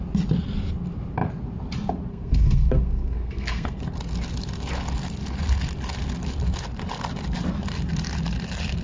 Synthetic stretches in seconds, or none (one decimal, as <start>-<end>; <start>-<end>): 2.1-3.8